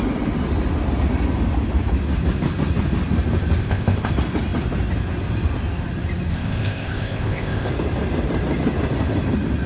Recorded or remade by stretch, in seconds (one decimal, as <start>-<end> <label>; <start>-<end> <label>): 0.0-3.6 recorded; 3.6-4.1 remade; 4.1-6.3 recorded; 6.3-7.7 remade; 7.7-9.7 recorded